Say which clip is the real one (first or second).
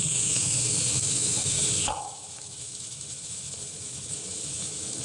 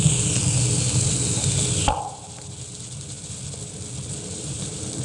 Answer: second